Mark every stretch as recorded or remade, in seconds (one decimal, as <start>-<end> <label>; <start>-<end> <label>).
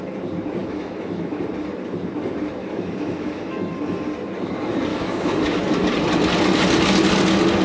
0.0-0.6 recorded; 0.6-1.4 remade; 1.4-2.6 recorded; 2.6-3.7 remade; 3.7-4.9 recorded; 4.9-5.6 remade; 5.6-7.6 recorded